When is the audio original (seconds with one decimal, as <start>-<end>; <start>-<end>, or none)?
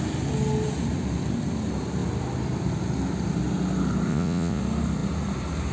0.0-4.1; 4.6-5.7